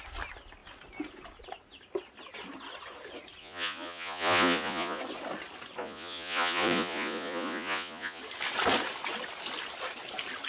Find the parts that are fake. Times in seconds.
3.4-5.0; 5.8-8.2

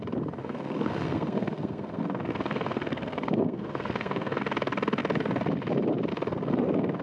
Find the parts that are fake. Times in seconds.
0.4-4.4

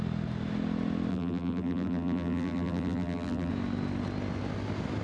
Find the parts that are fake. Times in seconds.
1.1-3.5

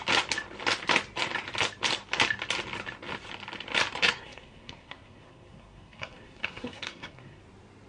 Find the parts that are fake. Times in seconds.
3.9-7.4

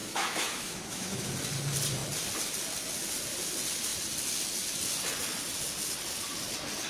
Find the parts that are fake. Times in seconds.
0.0-1.3

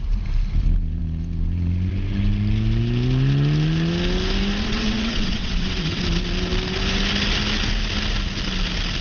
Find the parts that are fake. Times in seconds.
4.6-6.0